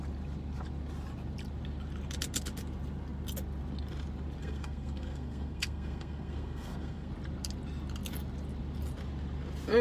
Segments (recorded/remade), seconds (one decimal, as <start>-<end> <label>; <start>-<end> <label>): 0.0-4.4 recorded; 4.4-7.1 remade; 7.1-9.8 recorded